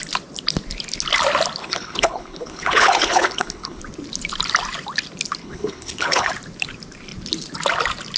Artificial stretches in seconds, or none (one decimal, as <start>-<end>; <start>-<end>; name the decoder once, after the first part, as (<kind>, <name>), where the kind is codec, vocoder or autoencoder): 1.6-3.8 (codec, HILCodec); 5.4-6.3